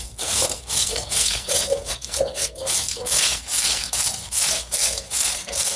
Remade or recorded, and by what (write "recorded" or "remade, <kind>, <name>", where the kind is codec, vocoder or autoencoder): remade, codec, SNAC